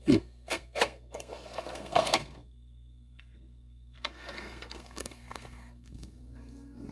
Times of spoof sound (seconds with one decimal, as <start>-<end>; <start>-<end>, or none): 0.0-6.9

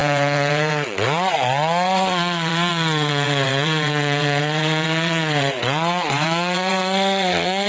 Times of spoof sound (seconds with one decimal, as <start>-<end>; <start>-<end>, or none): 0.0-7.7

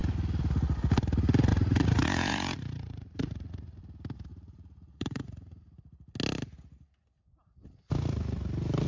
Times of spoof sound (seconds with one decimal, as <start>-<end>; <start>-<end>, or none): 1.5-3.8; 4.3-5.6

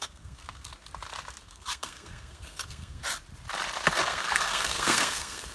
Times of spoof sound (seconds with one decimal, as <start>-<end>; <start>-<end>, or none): 0.0-0.7; 1.4-3.0; 4.0-5.5

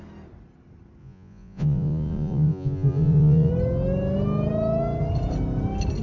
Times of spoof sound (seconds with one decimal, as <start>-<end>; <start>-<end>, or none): 1.0-3.5